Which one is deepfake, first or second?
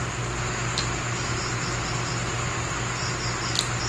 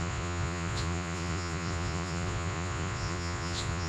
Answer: second